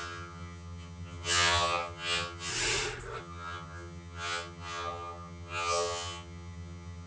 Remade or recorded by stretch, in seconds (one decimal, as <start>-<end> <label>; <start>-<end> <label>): 0.0-2.5 remade; 2.5-3.2 recorded; 3.2-7.1 remade

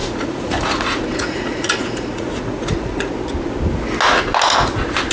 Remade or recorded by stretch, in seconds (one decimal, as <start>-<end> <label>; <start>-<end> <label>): 0.0-3.1 remade; 3.1-5.1 recorded

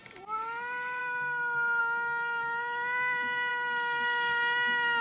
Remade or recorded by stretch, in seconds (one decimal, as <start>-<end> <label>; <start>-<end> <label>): 0.0-1.0 recorded; 1.0-1.8 remade; 1.8-3.5 recorded; 3.5-4.4 remade; 4.4-5.0 recorded

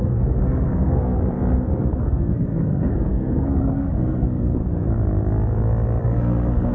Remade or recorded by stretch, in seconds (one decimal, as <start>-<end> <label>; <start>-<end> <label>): 0.0-1.2 remade; 1.2-2.0 recorded; 2.0-4.6 remade; 4.6-6.0 recorded; 6.0-6.7 remade

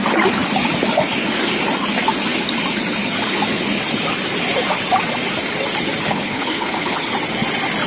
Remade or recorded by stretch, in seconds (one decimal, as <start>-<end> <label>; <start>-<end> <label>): 0.0-6.0 recorded; 6.0-7.1 remade; 7.1-7.9 recorded

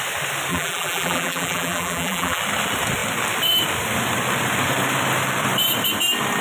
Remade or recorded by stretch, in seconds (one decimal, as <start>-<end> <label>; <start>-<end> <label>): 0.0-0.5 recorded; 0.5-2.4 remade; 2.4-6.4 recorded

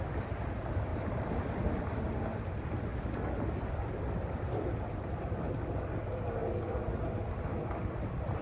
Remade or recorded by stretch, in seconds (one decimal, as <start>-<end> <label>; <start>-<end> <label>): 0.0-2.9 remade; 2.9-3.7 recorded; 3.7-6.4 remade; 6.4-7.3 recorded; 7.3-8.4 remade